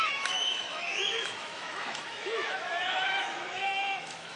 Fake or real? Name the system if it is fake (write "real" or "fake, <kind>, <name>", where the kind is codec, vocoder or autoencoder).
fake, autoencoder, DAC-VAE